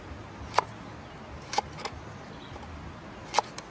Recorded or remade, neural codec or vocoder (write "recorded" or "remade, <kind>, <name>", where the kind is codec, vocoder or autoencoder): recorded